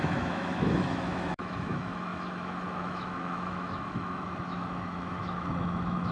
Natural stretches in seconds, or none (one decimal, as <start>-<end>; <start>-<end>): none